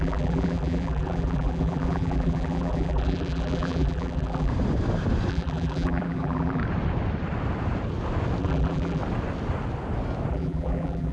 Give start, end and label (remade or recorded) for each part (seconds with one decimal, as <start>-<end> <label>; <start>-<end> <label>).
0.0-4.5 remade; 4.5-5.3 recorded; 5.3-6.6 remade; 6.6-8.4 recorded; 8.4-9.0 remade; 9.0-10.3 recorded; 10.3-11.1 remade